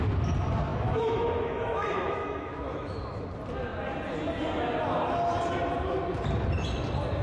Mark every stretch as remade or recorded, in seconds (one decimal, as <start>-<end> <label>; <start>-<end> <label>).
0.0-0.7 recorded; 0.7-3.0 remade; 3.0-7.2 recorded